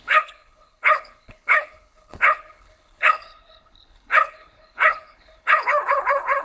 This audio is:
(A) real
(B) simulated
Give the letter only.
B